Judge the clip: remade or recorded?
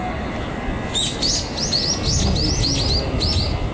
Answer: recorded